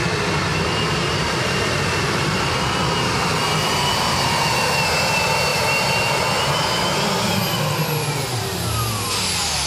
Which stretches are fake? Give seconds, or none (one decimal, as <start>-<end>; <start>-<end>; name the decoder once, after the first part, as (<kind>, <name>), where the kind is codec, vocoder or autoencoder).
0.5-2.5 (vocoder, BigVGAN v2); 5.5-6.1